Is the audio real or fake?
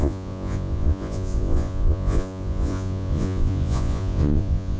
fake